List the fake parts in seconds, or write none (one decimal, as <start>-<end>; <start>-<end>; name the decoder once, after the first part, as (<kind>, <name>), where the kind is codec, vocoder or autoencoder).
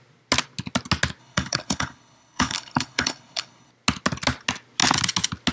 1.2-3.7 (codec, HILCodec)